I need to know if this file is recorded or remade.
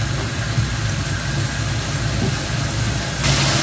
recorded